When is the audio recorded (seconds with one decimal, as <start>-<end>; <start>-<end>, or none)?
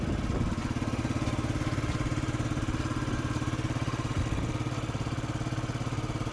0.0-0.6; 4.2-6.3